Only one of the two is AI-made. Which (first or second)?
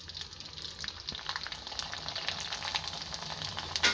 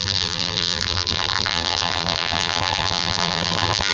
second